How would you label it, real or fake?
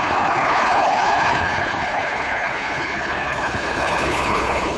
fake